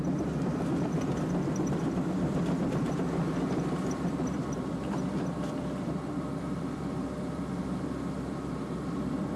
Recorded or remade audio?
remade